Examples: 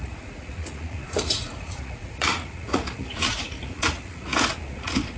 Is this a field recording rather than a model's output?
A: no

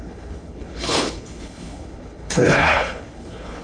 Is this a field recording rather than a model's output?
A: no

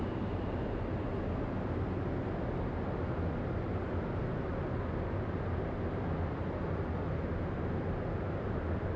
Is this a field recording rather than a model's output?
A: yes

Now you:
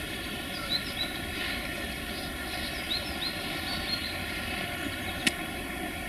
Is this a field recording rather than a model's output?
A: yes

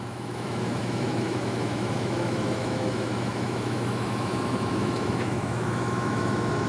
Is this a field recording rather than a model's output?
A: no